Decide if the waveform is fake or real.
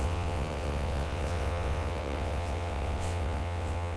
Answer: fake